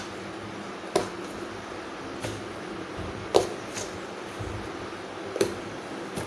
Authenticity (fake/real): real